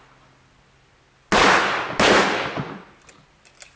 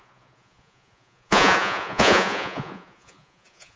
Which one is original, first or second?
first